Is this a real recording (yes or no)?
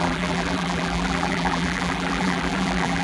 no